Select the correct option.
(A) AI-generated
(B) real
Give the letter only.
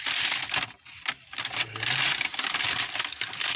B